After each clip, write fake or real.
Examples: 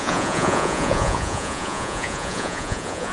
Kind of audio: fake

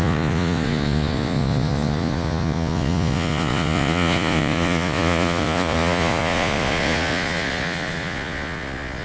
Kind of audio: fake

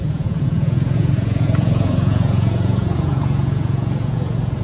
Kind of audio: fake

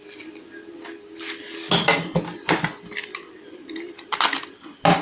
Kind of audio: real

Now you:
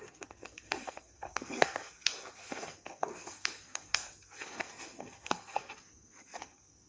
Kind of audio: fake